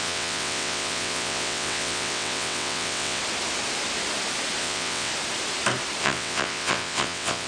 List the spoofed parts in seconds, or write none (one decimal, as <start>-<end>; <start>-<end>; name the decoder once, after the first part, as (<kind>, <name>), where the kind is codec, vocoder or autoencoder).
0.0-3.2 (vocoder, WaveNeXt); 4.6-5.1; 6.0-7.5